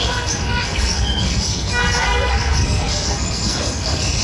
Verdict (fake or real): fake